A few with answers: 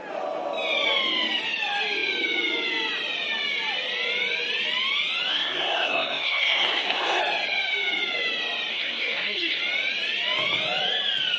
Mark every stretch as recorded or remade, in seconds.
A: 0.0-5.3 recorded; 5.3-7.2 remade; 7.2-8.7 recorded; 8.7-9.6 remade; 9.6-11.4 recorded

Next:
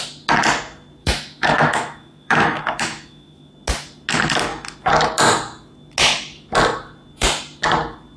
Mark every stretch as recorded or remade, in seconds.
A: 0.0-1.0 recorded; 1.0-3.5 remade; 3.5-8.2 recorded

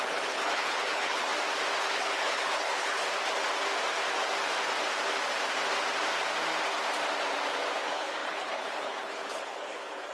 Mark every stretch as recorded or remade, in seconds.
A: 0.0-1.3 remade; 1.3-1.8 recorded; 1.8-3.0 remade; 3.0-7.8 recorded; 7.8-10.1 remade